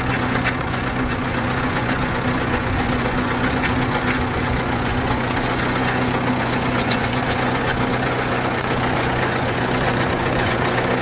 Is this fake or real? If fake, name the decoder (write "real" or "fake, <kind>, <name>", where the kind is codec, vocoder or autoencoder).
fake, vocoder, Vocos